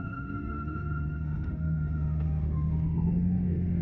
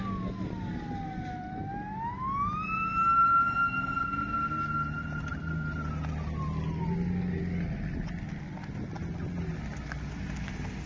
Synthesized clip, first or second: first